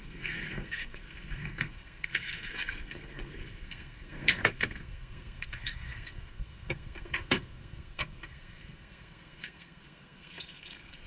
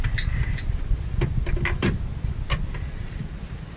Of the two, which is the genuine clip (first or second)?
second